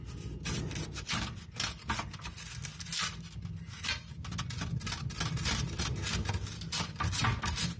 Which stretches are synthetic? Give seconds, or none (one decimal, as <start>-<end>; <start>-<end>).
none